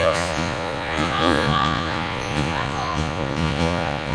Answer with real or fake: fake